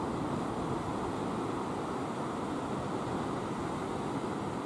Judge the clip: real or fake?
real